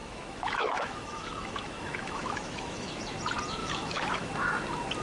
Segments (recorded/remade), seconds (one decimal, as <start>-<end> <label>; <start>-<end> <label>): 0.0-3.0 remade; 3.0-3.6 recorded; 3.6-4.3 remade; 4.3-5.0 recorded